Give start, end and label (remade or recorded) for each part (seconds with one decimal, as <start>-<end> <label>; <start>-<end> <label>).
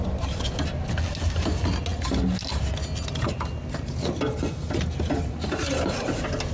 0.0-6.5 recorded